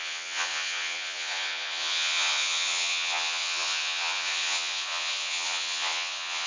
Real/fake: fake